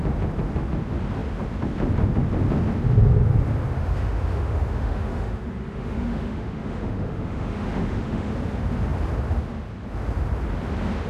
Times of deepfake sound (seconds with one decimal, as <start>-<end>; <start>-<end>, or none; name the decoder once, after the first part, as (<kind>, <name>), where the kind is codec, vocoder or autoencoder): 3.7-8.3 (autoencoder, DAC-VAE)